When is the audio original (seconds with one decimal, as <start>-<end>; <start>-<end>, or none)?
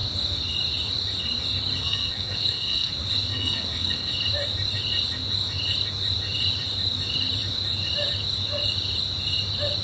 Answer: 0.0-1.8; 2.9-3.3; 4.1-9.8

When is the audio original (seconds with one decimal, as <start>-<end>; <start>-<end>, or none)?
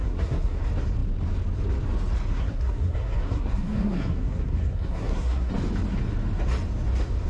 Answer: 0.6-2.3; 5.5-7.3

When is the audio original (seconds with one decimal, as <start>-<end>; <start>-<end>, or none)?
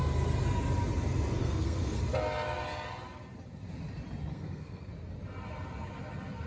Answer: 0.0-1.4; 2.0-4.3; 4.9-6.5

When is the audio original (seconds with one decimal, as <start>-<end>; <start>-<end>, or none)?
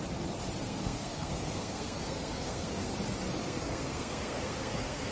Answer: 0.0-0.6; 2.9-3.4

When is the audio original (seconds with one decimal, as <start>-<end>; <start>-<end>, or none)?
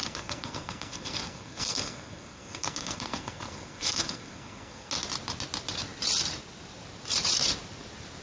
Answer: 4.9-8.2